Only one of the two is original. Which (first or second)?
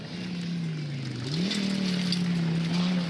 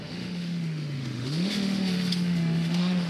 first